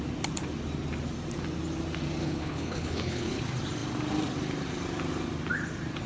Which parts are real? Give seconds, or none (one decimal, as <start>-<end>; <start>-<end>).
0.0-2.2; 3.4-6.1